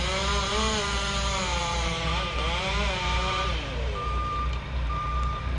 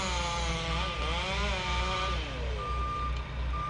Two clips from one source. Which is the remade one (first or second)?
first